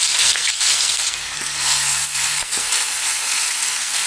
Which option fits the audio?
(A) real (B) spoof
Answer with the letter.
B